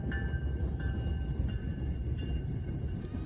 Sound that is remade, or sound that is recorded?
recorded